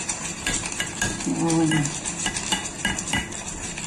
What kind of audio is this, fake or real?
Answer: real